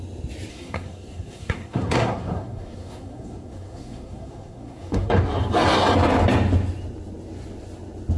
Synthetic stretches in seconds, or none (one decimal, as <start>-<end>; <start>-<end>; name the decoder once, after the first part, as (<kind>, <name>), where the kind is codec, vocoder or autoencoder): 0.5-5.2 (codec, SNAC)